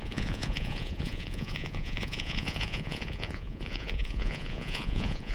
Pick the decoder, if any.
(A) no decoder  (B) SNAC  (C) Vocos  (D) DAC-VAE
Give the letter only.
C